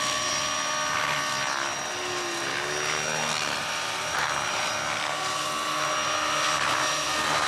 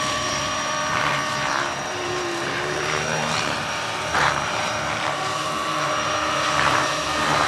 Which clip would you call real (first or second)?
first